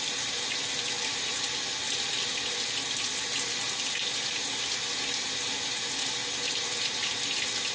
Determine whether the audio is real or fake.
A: real